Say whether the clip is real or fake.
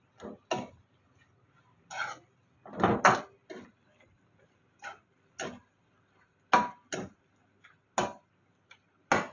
real